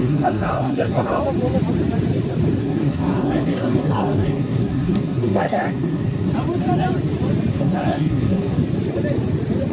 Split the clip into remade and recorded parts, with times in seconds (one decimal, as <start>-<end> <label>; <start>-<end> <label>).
0.0-1.2 remade; 1.2-2.6 recorded; 2.6-6.3 remade; 6.3-7.5 recorded; 7.5-8.6 remade; 8.6-9.7 recorded